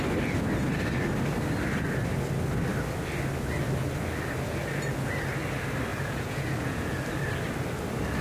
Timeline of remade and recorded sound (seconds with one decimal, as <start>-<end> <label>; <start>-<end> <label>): 0.0-5.9 recorded; 5.9-7.0 remade; 7.0-8.2 recorded